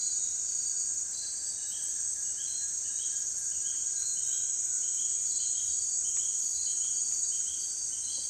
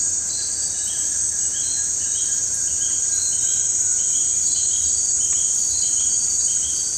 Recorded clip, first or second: first